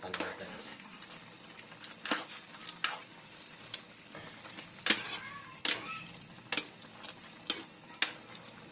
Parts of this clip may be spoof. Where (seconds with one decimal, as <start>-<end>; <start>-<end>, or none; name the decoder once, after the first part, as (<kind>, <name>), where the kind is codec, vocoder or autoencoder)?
0.5-1.0 (codec, SNAC)